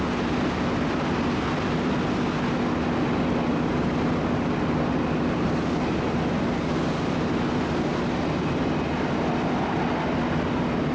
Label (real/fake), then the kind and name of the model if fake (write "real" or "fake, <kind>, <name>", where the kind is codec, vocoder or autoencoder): real